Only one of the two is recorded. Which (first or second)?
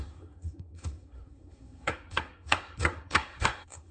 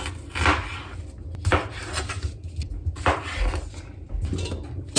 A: second